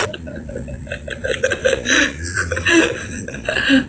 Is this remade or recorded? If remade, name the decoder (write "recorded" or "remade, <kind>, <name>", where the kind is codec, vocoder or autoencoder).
remade, vocoder, Vocos